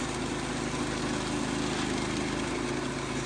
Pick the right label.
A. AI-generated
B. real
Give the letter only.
B